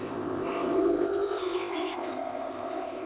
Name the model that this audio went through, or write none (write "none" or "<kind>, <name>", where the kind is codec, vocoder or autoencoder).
codec, ZipCodec